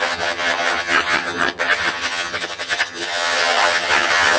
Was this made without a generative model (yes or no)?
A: no